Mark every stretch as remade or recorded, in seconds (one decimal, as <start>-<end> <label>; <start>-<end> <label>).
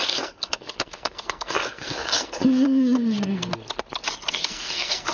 0.0-3.5 remade; 3.5-4.3 recorded; 4.3-5.1 remade